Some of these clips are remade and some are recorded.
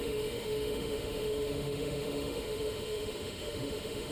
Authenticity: remade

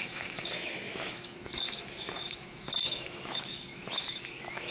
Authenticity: remade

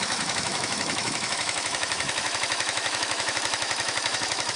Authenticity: remade